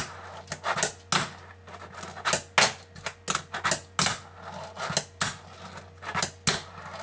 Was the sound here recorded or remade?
recorded